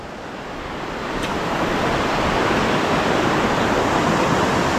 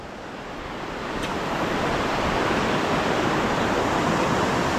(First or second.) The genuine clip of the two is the first